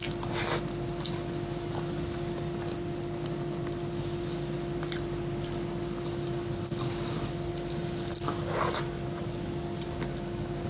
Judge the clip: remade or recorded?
recorded